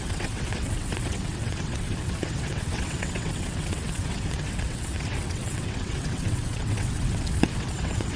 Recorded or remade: remade